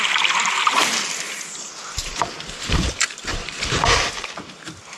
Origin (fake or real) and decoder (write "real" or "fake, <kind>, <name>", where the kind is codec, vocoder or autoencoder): real